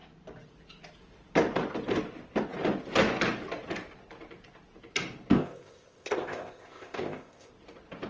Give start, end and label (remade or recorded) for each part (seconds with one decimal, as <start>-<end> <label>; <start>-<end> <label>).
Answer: 0.0-5.3 recorded; 5.3-7.5 remade; 7.5-8.1 recorded